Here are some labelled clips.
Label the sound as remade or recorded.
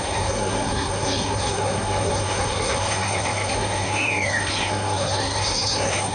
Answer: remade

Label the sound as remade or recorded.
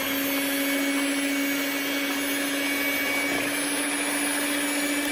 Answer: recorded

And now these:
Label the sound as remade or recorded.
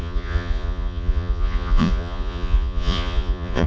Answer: remade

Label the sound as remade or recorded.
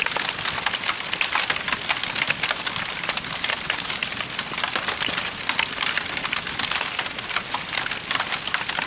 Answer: recorded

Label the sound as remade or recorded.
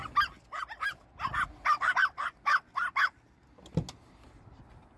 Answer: recorded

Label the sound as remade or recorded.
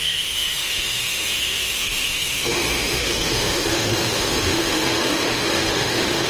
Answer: remade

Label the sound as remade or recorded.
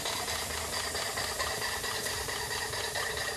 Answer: remade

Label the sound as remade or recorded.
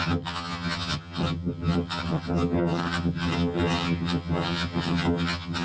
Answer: remade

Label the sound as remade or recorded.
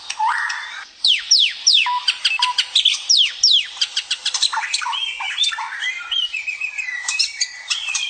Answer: remade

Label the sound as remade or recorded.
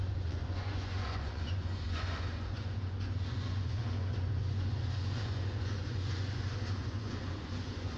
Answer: remade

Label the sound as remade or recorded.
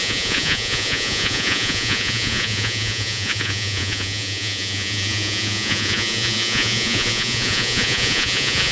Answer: remade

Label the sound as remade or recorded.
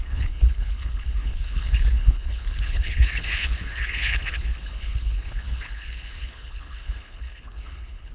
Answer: remade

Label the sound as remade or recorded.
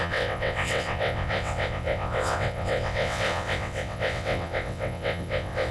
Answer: remade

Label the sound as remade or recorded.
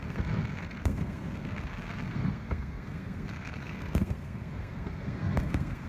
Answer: remade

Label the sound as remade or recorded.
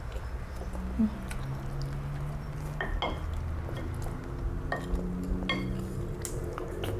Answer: recorded